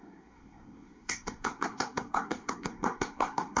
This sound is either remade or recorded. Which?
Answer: remade